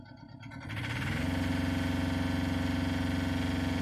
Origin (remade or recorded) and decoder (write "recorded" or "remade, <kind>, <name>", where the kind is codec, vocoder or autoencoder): recorded